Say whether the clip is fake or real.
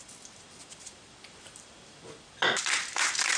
real